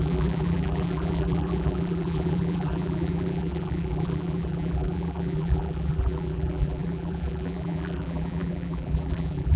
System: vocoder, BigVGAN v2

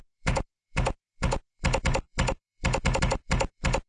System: vocoder, BigVGAN v2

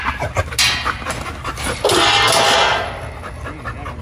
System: none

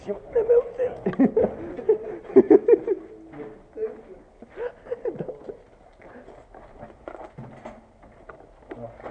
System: none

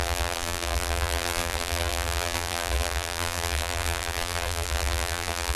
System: vocoder, BigVGAN v2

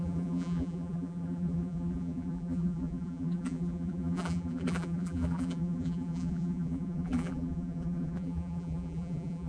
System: vocoder, BigVGAN v2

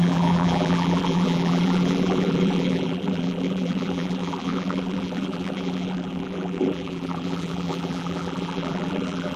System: vocoder, BigVGAN v2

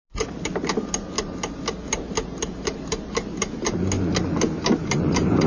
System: none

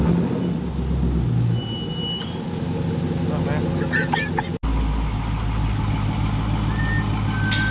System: none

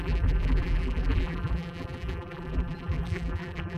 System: vocoder, BigVGAN v2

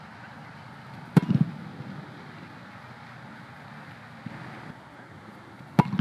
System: none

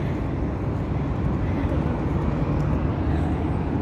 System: none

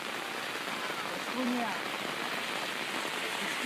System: none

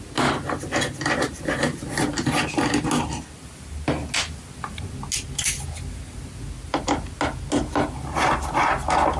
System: none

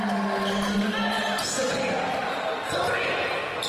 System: none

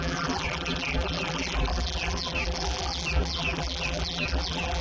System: vocoder, BigVGAN v2